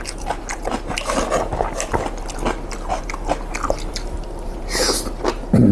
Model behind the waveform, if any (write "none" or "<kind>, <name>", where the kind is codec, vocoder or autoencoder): none